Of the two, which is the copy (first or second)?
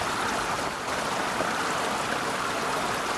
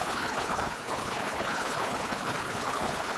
second